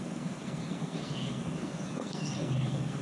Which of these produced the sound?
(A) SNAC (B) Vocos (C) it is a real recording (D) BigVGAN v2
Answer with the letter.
A